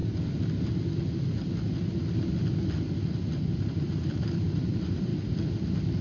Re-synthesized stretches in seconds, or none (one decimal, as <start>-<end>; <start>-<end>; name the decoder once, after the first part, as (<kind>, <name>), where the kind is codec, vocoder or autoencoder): 3.6-5.1 (vocoder, BigVGAN v2)